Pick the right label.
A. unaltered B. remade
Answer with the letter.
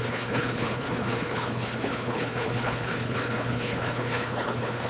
B